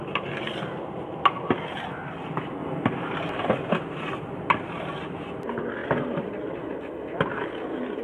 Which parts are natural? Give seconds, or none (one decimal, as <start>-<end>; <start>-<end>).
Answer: 0.0-8.0